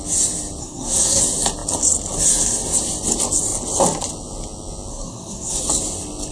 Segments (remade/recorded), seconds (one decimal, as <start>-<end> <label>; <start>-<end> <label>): 0.0-0.6 recorded; 0.6-1.2 remade; 1.2-4.9 recorded; 4.9-5.6 remade; 5.6-6.3 recorded